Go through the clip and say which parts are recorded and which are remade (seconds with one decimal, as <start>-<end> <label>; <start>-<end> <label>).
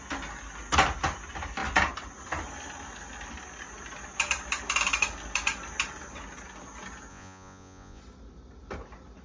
0.0-7.1 recorded; 7.1-8.0 remade; 8.0-9.2 recorded